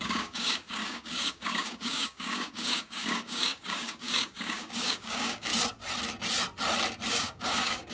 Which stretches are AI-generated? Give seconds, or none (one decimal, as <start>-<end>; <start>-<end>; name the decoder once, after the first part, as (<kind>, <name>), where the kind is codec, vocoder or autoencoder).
0.0-5.5 (codec, DAC); 7.1-7.9